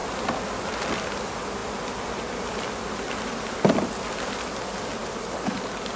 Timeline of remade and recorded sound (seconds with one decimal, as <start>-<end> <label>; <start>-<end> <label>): 0.0-6.0 recorded